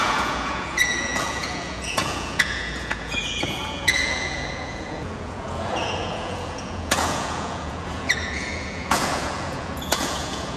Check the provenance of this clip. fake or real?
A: fake